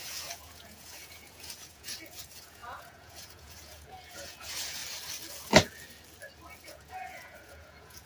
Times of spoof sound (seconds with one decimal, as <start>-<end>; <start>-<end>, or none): 0.0-4.8; 6.6-8.1